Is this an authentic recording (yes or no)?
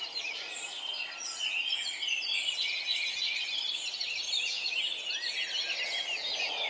yes